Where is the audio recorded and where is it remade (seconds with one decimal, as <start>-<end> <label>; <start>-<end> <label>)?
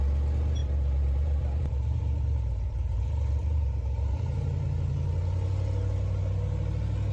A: 0.0-0.6 recorded; 0.6-4.9 remade; 4.9-7.1 recorded